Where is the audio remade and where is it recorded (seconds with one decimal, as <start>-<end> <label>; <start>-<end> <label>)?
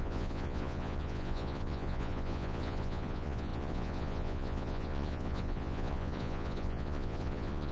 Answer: 0.0-7.7 remade